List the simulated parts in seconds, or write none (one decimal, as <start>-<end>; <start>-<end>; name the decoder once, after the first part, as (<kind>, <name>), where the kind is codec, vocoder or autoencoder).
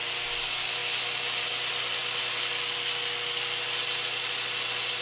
none